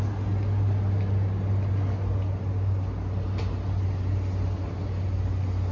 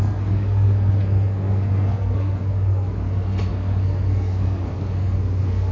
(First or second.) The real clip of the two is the first